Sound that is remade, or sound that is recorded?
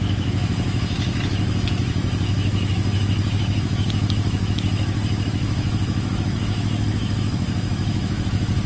remade